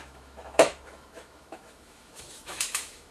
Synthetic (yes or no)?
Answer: yes